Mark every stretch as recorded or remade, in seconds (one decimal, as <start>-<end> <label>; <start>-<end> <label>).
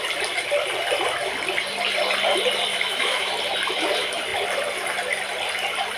0.0-2.7 recorded; 2.7-3.3 remade; 3.3-6.0 recorded